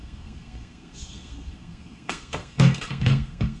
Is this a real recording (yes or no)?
no